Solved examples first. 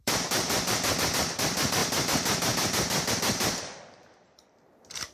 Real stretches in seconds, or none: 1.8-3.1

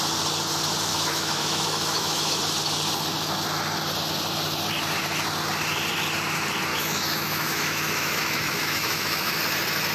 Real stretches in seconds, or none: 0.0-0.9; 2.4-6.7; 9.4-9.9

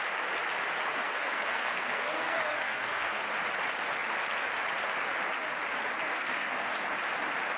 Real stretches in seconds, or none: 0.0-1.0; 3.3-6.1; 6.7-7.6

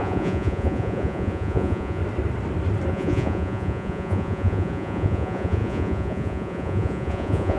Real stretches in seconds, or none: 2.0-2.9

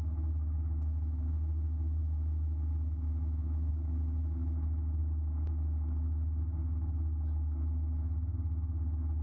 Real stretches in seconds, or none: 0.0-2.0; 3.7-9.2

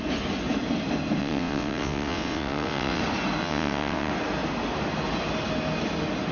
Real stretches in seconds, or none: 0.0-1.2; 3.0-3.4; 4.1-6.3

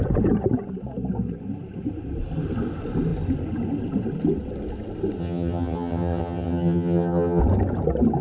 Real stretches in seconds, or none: 0.0-5.2; 7.4-8.2

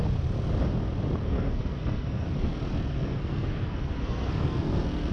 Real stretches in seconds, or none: 0.0-1.2; 2.6-3.0